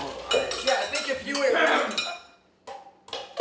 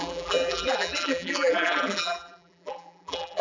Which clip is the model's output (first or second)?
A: second